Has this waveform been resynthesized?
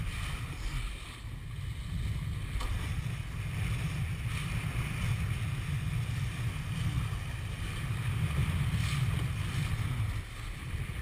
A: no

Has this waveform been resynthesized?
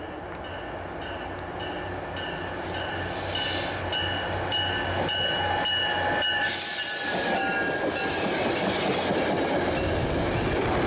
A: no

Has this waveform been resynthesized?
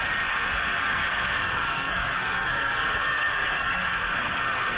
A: yes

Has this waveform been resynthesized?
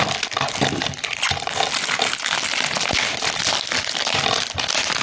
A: no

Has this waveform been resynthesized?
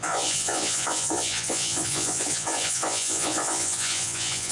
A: yes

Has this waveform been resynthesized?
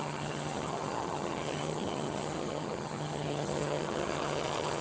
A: yes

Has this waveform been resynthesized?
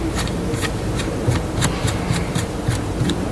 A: yes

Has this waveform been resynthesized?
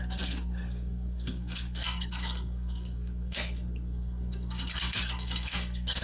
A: yes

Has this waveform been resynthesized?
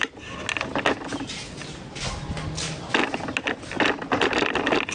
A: no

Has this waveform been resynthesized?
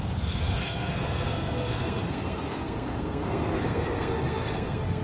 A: yes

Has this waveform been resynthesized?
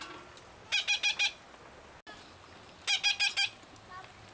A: no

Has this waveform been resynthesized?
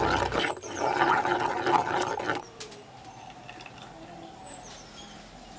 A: no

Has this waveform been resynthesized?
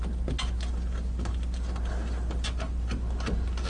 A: no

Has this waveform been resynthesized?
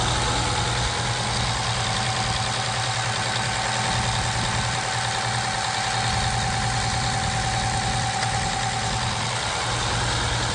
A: no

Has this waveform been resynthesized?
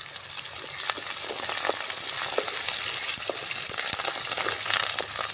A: no